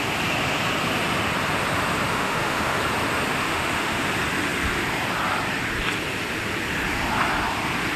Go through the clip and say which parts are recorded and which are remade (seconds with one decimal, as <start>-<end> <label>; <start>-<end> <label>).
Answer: 0.0-2.1 recorded; 2.1-2.8 remade; 2.8-3.3 recorded; 3.3-4.1 remade; 4.1-8.0 recorded